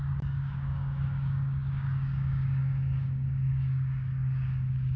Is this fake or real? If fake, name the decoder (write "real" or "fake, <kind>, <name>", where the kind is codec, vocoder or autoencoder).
fake, codec, DAC